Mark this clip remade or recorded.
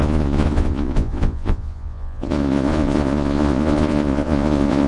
remade